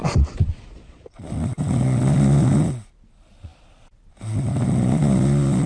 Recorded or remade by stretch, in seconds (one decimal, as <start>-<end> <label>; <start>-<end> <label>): 0.0-1.2 remade; 1.2-5.7 recorded